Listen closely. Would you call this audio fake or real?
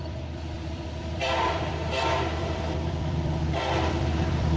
fake